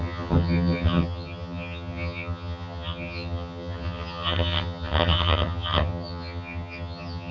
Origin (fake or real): fake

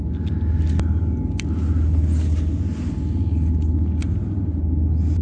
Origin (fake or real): real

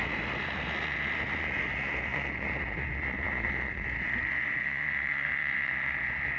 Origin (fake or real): fake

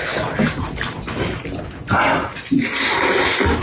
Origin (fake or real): real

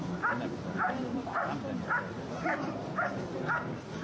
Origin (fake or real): real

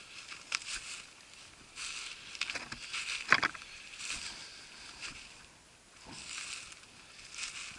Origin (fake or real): real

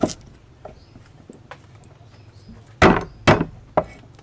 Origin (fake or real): real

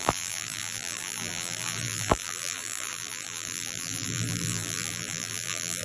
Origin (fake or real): fake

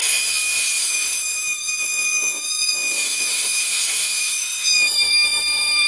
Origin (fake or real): fake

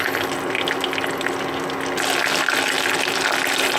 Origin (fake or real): real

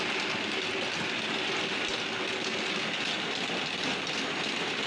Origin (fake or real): real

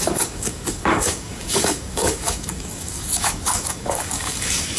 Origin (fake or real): fake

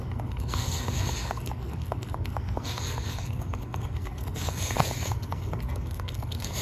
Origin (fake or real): fake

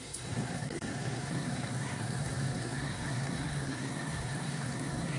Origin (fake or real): fake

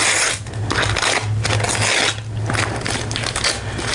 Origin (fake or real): real